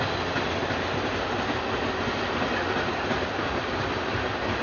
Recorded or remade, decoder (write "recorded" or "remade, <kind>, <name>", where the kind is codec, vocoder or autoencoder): recorded